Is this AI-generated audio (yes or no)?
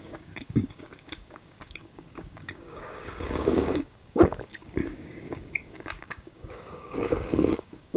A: yes